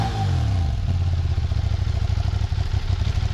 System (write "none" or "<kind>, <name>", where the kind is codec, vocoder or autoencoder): none